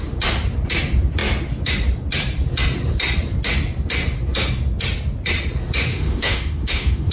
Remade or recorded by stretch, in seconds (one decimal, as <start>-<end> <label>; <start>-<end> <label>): 0.0-5.9 recorded; 5.9-7.1 remade